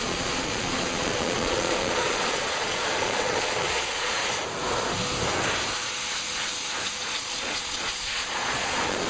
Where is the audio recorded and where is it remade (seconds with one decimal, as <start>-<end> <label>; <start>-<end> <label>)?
0.0-4.2 remade; 4.2-7.0 recorded; 7.0-9.1 remade